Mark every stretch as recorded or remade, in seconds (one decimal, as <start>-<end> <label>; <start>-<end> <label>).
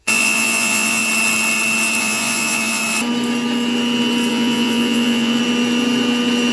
0.0-1.0 remade; 1.0-2.0 recorded; 2.0-2.8 remade; 2.8-4.3 recorded; 4.3-5.4 remade; 5.4-6.5 recorded